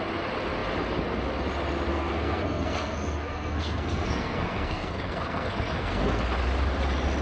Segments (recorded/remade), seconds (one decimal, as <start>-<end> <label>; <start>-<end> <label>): 0.0-1.9 recorded; 1.9-6.2 remade; 6.2-7.2 recorded